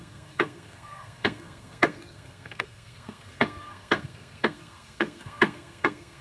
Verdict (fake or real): fake